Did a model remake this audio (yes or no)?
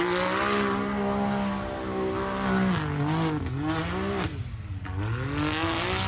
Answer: no